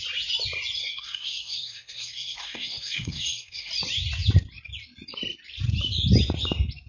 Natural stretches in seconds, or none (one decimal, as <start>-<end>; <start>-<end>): 0.0-0.8; 3.7-6.9